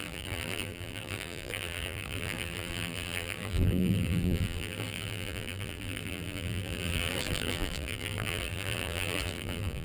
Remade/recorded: remade